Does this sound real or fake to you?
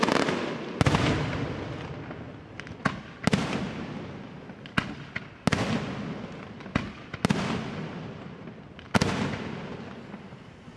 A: real